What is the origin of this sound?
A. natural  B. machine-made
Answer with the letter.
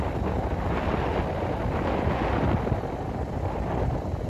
A